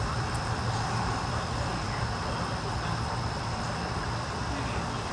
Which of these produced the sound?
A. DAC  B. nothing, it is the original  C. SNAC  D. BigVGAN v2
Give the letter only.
D